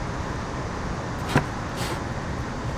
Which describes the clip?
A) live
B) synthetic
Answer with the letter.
A